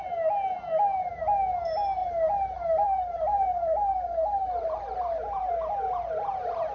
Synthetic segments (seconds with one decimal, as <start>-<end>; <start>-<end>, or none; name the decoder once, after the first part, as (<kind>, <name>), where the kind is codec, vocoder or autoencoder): 2.0-5.5 (vocoder, BigVGAN v2)